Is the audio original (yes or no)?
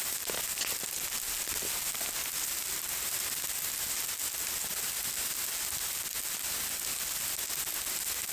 yes